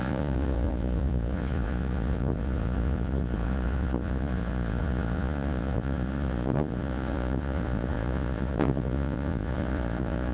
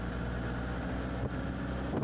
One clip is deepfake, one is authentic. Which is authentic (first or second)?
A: second